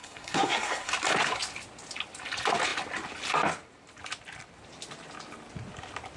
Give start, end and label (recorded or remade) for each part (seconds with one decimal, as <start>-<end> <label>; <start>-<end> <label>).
0.0-0.9 remade; 0.9-6.2 recorded